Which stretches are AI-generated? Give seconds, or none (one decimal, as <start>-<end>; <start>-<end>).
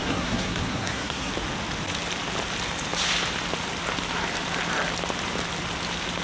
0.0-1.3